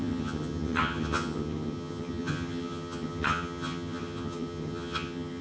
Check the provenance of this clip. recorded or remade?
remade